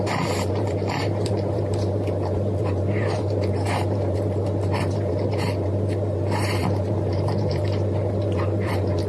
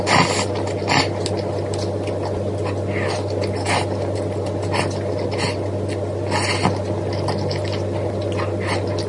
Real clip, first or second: second